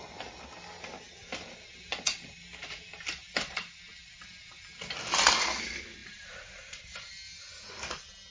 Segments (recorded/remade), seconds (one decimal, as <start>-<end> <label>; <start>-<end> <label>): 0.0-6.0 recorded; 6.0-7.1 remade; 7.1-8.3 recorded